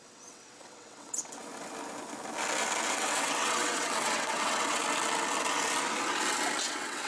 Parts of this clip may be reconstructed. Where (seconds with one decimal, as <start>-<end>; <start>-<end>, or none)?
0.0-1.5; 2.9-4.8; 6.6-7.1